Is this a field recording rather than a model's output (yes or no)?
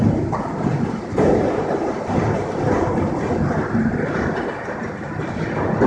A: yes